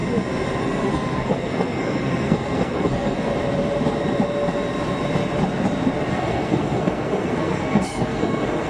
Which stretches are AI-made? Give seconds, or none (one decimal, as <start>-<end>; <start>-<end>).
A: 0.6-3.3; 6.1-8.7